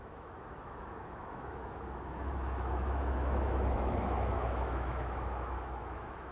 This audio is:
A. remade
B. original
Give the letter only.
A